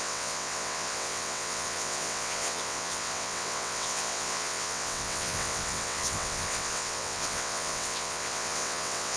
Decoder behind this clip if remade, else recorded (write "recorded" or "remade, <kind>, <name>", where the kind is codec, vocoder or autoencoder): remade, vocoder, WaveNeXt